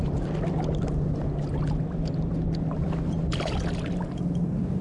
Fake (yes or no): no